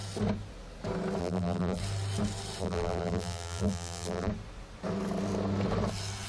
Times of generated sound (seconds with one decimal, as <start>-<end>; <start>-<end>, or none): 1.2-1.8; 2.6-4.3